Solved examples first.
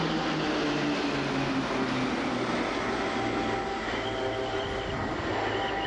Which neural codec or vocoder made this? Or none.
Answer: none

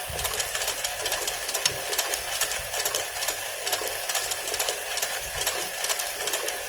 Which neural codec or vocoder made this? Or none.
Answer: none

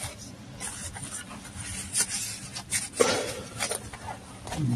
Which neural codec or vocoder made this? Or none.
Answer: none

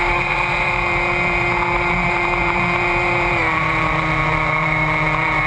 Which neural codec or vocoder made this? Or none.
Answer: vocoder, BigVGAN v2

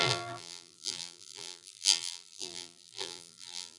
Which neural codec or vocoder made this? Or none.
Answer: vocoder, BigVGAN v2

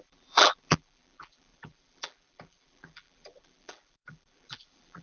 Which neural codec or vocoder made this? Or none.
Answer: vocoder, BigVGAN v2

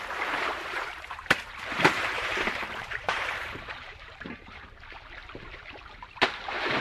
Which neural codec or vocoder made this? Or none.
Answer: vocoder, BigVGAN v2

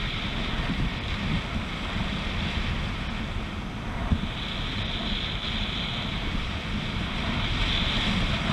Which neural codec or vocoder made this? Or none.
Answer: none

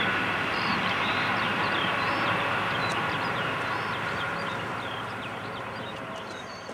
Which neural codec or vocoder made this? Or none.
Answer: vocoder, BigVGAN v2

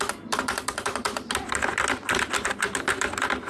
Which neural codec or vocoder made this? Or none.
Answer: vocoder, BigVGAN v2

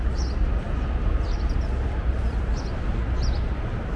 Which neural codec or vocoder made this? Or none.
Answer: none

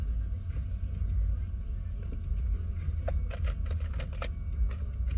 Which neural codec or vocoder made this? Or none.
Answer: none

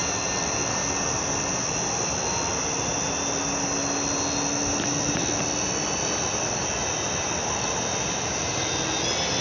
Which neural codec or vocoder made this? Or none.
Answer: none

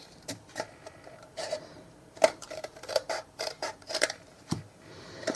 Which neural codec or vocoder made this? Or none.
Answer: vocoder, BigVGAN v2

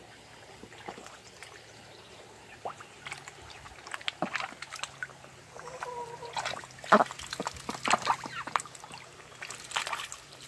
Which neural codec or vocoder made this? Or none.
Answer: none